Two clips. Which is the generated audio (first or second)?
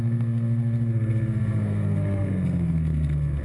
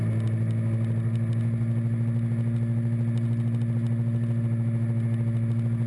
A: first